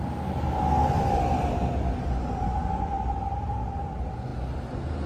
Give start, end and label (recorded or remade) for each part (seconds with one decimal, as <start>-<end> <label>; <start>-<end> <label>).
0.0-5.1 recorded